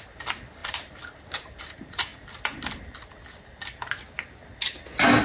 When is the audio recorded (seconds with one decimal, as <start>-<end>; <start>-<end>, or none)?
0.0-0.6; 1.6-2.1; 3.1-5.2